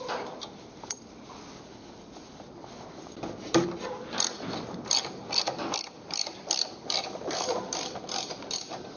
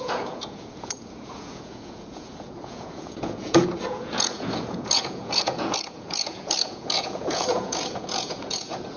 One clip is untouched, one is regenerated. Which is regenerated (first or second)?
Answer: second